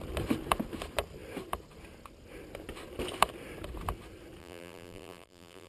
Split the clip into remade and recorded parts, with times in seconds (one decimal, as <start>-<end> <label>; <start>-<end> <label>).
0.0-4.4 recorded; 4.4-5.7 remade